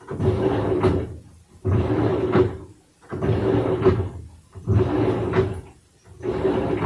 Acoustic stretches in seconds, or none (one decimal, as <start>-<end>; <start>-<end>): 0.0-6.9